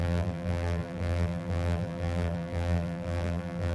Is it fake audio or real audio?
fake